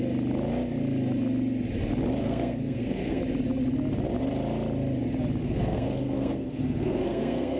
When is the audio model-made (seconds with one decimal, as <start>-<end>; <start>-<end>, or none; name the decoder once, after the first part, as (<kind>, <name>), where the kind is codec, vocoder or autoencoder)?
2.2-3.2 (codec, SNAC); 5.4-7.6